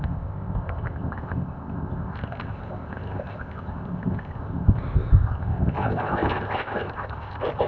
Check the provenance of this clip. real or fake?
fake